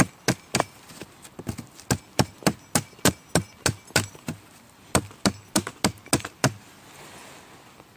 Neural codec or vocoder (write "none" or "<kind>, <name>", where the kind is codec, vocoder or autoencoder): none